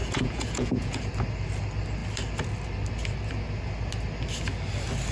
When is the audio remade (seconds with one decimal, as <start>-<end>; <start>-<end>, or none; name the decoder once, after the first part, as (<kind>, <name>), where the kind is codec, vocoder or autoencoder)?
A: 0.0-1.0 (vocoder, Vocos)

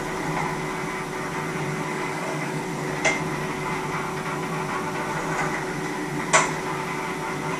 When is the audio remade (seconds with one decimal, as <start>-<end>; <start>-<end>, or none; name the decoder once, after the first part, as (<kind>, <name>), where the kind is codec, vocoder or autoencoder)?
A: 1.9-2.6 (codec, DAC)